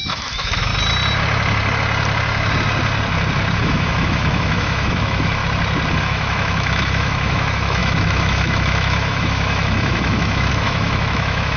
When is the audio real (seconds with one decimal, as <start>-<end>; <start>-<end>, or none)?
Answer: 0.7-3.6; 5.4-6.0